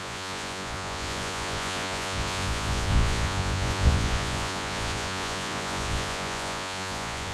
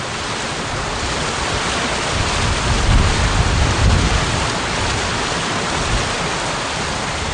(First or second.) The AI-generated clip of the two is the first